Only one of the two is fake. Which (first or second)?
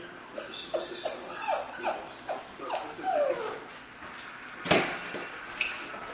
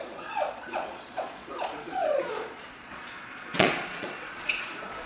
second